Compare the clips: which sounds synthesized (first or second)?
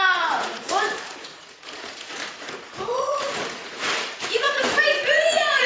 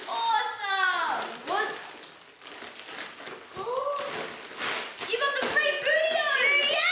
first